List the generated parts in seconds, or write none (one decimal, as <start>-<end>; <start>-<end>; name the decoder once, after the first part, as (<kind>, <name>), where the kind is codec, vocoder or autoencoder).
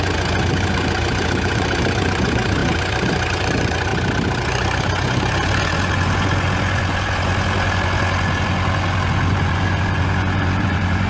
0.0-3.9 (vocoder, Vocos); 4.4-11.1